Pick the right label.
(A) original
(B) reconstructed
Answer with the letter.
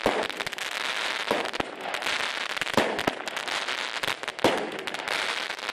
A